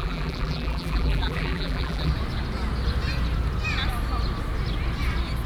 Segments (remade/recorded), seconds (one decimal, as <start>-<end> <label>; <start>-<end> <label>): 0.0-2.1 remade; 2.1-5.5 recorded